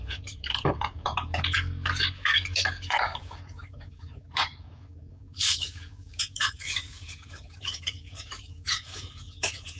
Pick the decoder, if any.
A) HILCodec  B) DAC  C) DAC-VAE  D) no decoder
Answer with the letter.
B